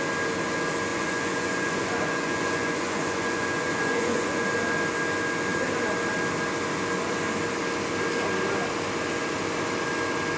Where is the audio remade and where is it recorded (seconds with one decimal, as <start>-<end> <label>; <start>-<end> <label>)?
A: 0.0-0.9 recorded; 0.9-4.5 remade; 4.5-10.4 recorded